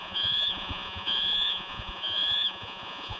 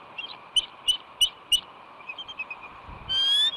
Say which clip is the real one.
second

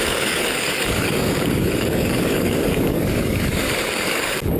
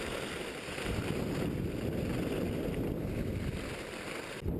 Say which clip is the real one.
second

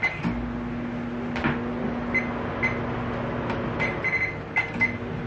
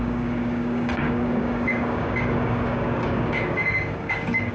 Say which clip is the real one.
first